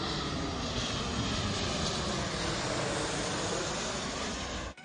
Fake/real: real